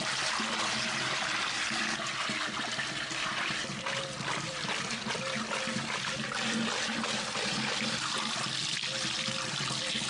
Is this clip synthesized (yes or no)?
no